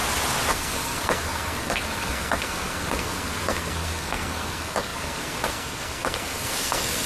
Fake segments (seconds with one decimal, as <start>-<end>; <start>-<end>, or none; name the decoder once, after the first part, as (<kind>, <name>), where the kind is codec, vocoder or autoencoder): 0.5-7.1 (codec, SNAC)